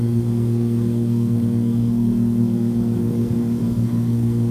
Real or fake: fake